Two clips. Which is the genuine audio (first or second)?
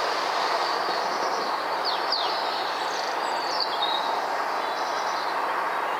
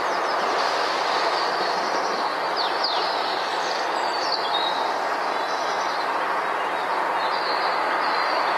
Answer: first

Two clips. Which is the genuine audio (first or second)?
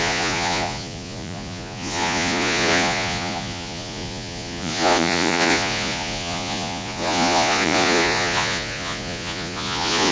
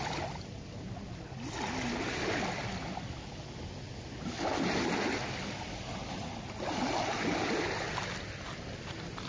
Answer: second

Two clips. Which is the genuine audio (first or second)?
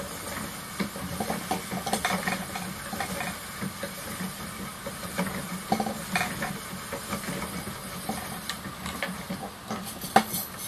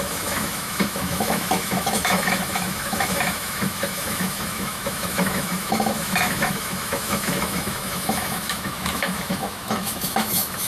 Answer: first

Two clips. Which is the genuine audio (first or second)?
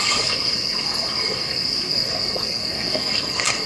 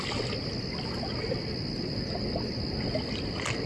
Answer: second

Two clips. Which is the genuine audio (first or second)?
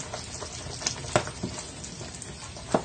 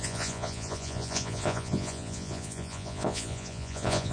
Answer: first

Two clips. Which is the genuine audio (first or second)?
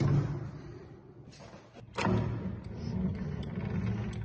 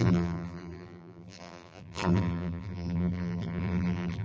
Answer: first